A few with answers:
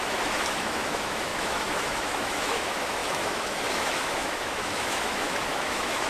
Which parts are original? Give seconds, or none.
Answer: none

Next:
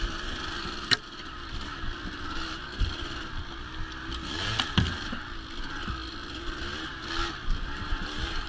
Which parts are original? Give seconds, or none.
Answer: 0.0-8.5

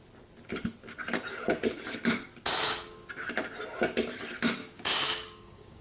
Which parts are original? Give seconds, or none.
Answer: 0.0-4.6

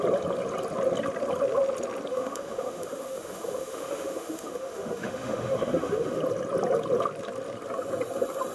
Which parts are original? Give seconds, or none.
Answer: 0.0-2.1; 6.2-8.5

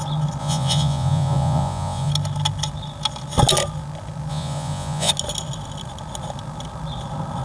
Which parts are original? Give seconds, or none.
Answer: 0.0-0.4; 2.1-4.3; 5.1-7.4

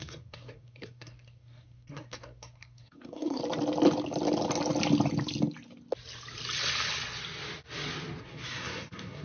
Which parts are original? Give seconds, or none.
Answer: 3.4-8.2

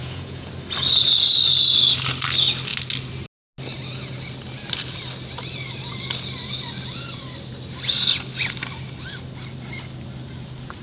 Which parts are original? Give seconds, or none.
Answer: 0.5-10.8

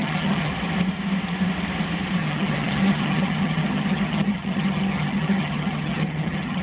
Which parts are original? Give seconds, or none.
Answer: 0.5-2.2